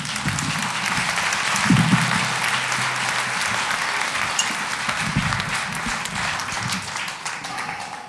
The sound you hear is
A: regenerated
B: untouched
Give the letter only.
B